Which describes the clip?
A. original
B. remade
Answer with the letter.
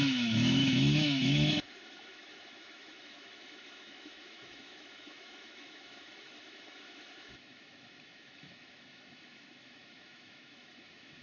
B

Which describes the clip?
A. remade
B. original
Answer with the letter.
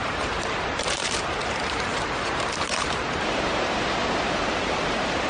A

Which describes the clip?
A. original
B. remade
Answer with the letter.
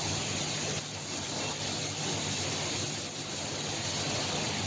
A